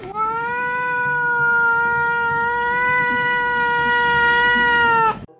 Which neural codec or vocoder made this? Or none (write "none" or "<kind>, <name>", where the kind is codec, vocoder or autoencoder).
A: autoencoder, DAC-VAE